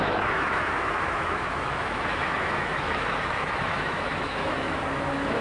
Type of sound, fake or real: fake